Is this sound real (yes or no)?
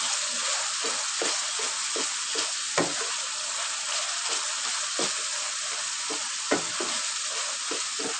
yes